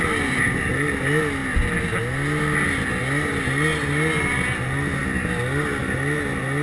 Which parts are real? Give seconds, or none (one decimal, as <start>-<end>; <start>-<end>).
0.0-6.6